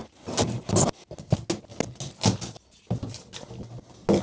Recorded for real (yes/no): yes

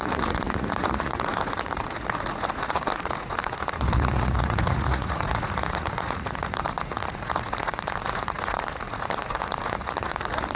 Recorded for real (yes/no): no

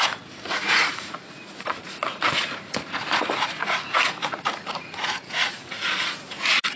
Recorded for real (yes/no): no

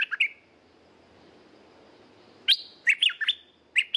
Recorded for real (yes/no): yes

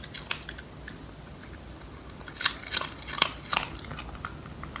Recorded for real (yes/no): yes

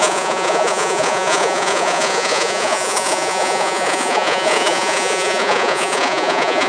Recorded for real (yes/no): no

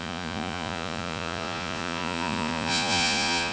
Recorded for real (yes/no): no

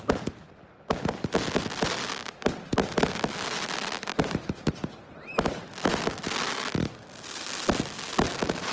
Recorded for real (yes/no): yes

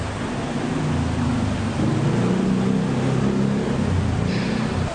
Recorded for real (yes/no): yes